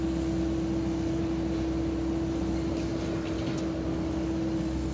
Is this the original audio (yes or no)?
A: yes